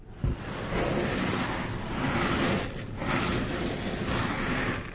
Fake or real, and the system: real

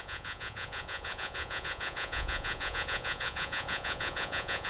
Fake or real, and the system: fake, vocoder, Vocos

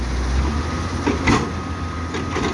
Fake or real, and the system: real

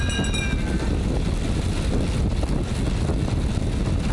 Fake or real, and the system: real